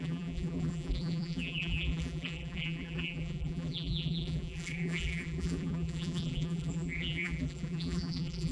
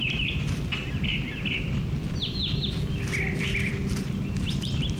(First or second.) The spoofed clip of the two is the first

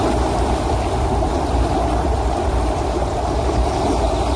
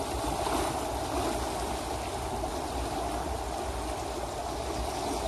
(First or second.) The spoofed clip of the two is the first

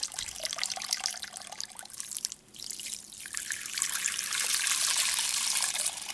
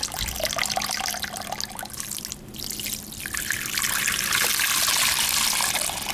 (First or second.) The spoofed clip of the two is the first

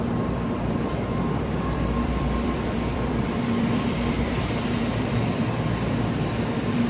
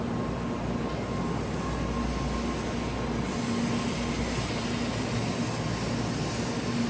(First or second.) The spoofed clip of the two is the first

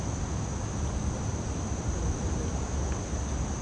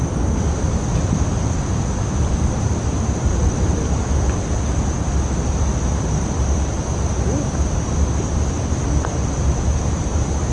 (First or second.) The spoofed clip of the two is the second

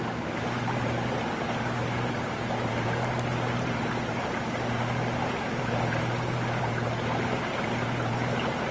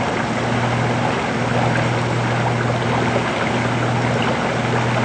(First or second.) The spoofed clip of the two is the first